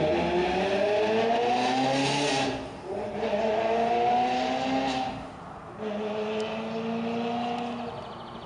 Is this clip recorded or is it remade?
recorded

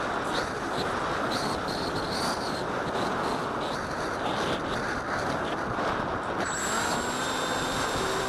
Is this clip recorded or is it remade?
recorded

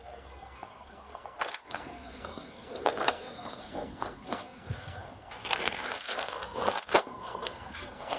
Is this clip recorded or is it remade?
remade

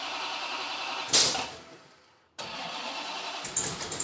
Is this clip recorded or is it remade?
recorded